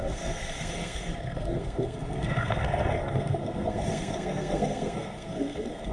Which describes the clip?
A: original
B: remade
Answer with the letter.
B